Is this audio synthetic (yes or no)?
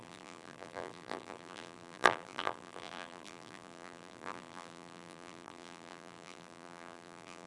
yes